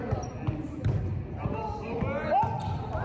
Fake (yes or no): no